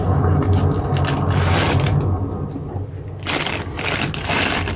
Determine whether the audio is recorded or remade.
recorded